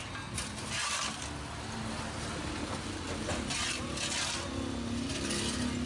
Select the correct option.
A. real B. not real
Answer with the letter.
A